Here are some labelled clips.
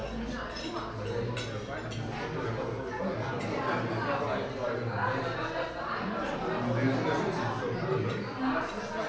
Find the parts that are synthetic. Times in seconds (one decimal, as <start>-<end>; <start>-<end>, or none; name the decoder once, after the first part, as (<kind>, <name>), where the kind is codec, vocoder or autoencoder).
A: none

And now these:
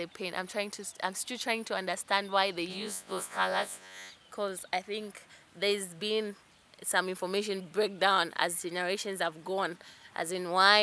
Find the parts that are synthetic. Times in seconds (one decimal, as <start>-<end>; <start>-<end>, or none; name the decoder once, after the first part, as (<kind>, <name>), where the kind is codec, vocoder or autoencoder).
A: 2.7-4.1 (vocoder, Vocos)

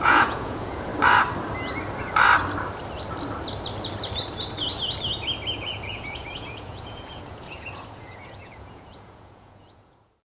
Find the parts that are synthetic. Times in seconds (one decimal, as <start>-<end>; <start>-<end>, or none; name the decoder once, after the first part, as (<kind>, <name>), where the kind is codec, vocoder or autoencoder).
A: 0.0-0.9 (vocoder, Vocos); 5.6-10.4

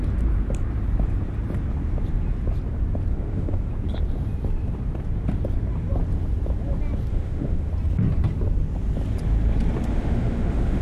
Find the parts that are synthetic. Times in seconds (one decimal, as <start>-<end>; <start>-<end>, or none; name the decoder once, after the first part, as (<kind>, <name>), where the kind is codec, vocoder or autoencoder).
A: 3.1-3.7 (autoencoder, DAC-VAE); 7.1-7.7; 9.9-10.8

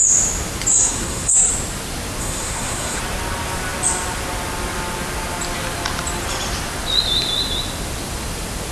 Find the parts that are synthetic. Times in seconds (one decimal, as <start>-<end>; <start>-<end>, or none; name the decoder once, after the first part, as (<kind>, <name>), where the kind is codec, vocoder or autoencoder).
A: 0.7-1.5 (codec, SNAC); 2.2-3.0